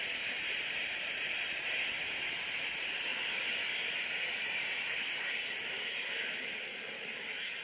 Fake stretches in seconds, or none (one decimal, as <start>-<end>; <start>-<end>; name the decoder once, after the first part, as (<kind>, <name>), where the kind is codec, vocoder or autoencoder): none